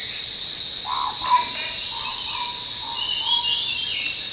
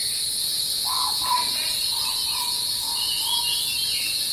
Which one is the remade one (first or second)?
second